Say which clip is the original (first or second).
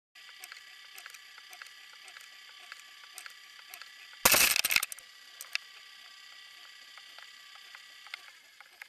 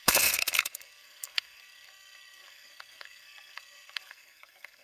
first